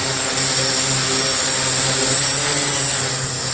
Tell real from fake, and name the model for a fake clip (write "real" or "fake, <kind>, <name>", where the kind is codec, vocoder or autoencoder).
real